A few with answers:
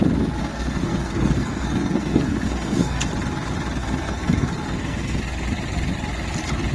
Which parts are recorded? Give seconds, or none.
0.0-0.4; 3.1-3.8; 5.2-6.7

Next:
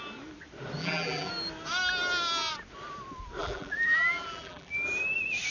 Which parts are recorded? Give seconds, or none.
0.0-0.8; 1.3-3.4; 4.7-5.5